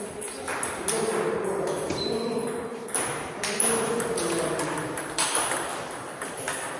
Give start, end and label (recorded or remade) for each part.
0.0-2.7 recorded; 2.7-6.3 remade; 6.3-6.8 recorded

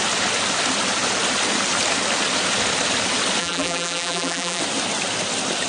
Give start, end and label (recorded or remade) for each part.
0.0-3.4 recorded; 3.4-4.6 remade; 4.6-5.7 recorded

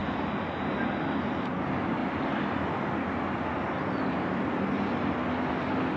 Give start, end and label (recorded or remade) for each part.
0.0-6.0 recorded